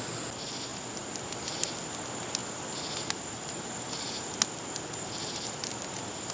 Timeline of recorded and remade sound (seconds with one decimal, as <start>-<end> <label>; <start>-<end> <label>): 0.0-6.3 recorded